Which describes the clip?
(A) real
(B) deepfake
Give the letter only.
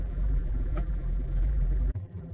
B